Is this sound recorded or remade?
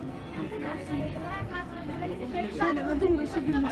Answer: remade